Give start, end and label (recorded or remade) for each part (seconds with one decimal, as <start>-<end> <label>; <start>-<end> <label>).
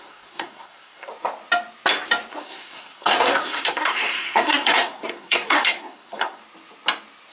0.0-1.1 remade; 1.1-2.3 recorded; 2.3-6.4 remade; 6.4-7.3 recorded